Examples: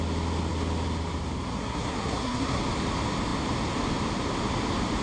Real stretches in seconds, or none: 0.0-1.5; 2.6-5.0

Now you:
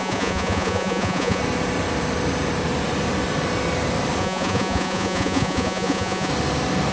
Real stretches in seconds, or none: 1.4-4.2; 6.3-6.9

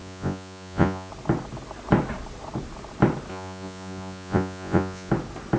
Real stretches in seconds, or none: 1.1-3.3; 5.1-5.6

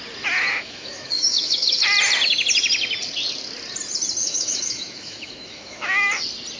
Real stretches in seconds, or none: 0.0-0.5; 1.8-4.2; 5.9-6.6

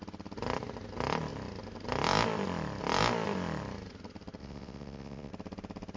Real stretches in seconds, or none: 0.0-4.4; 5.3-6.0

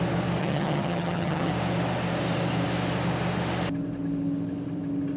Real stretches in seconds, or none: 0.0-0.4; 1.5-5.2